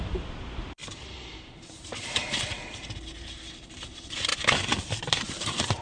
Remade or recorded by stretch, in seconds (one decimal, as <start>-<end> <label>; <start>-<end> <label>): 0.0-0.8 remade; 0.8-1.4 recorded; 1.4-4.3 remade; 4.3-4.8 recorded; 4.8-5.8 remade